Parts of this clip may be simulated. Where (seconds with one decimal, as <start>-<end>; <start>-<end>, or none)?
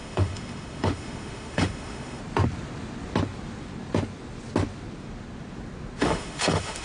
0.0-2.2; 6.0-6.8